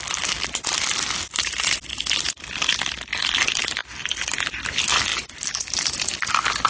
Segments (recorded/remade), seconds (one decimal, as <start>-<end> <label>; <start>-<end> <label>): 0.0-6.7 recorded